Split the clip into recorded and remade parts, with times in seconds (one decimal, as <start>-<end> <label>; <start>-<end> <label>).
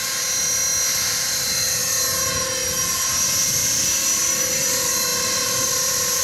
0.0-1.4 recorded; 1.4-1.8 remade; 1.8-4.3 recorded; 4.3-6.2 remade